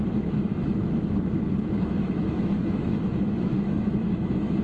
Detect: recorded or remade remade